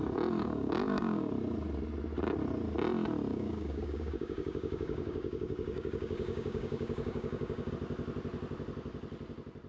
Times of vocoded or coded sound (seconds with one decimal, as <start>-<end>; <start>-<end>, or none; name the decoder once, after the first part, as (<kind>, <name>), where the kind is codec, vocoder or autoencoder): 0.4-1.3 (codec, DAC); 3.3-7.7